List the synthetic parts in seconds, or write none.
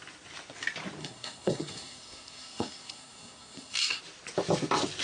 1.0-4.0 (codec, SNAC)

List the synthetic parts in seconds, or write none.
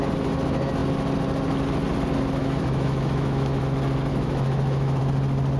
2.4-3.6 (autoencoder, DAC-VAE); 4.1-5.0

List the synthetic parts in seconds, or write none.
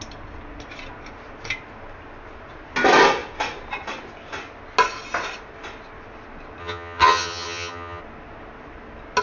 6.6-8.0 (vocoder, HiFi-GAN)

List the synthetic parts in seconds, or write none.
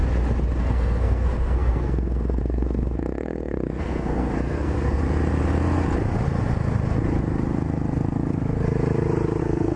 0.6-5.0 (codec, SNAC); 9.4-9.8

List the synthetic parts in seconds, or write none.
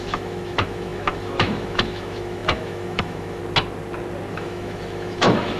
0.0-3.4 (autoencoder, DAC-VAE); 4.3-5.6